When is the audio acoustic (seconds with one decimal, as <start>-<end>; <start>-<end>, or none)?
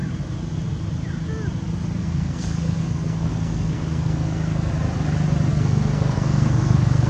0.0-2.0; 4.7-5.5